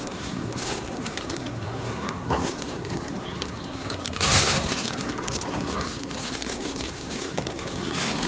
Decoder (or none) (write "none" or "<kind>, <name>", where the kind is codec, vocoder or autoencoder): codec, SNAC